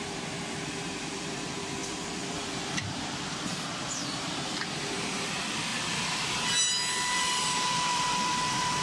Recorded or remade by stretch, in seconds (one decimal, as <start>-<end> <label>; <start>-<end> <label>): 0.0-8.8 remade